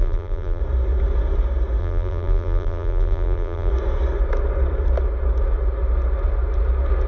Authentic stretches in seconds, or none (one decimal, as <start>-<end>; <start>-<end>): 0.6-1.8; 3.7-7.1

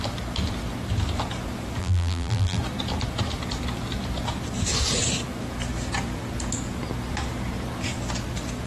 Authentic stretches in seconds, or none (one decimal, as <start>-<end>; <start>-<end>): 0.0-1.8; 2.6-8.7

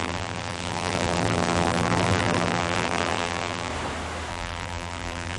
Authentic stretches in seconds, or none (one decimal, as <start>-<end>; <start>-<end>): 3.7-4.3

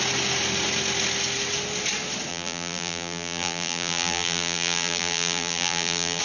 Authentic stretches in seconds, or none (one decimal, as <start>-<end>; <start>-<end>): 0.0-2.3

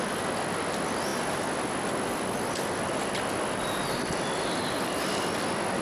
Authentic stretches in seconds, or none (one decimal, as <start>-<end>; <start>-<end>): 0.0-1.1; 4.6-5.8

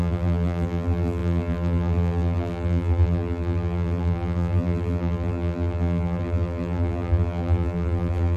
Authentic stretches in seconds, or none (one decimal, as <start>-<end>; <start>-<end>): none

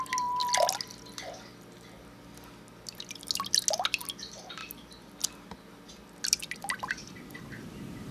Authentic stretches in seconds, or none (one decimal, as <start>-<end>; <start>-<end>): 0.0-8.1

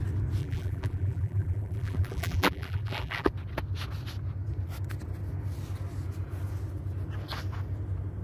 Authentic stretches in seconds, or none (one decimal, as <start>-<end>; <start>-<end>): 0.0-0.4; 3.3-8.2